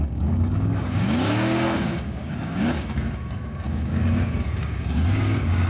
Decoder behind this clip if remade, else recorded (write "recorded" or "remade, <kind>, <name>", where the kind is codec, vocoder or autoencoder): remade, codec, DAC